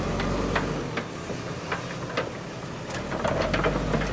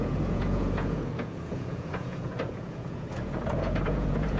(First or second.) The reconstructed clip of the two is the second